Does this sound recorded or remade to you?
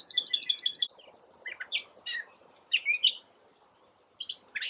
recorded